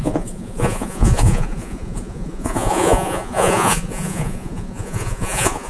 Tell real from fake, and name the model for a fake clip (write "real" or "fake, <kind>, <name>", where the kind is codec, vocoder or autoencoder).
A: fake, vocoder, Vocos